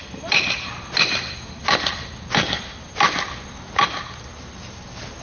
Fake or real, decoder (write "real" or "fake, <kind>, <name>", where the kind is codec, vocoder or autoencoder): real